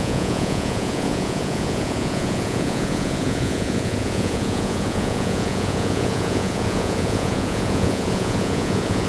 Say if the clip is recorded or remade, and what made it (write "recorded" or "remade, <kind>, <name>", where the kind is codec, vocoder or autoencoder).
remade, vocoder, Vocos